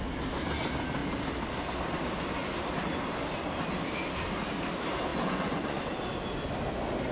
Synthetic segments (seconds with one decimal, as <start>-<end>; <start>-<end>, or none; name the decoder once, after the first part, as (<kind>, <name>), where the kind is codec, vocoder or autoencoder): 5.1-5.8 (vocoder, Vocos)